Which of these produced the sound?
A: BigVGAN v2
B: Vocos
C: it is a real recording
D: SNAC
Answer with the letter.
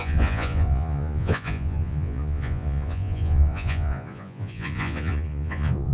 B